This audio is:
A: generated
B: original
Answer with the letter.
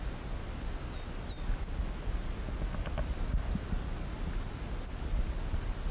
B